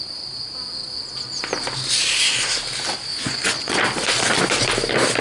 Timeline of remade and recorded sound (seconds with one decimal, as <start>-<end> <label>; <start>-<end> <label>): 0.0-3.1 recorded; 3.1-3.7 remade; 3.7-5.2 recorded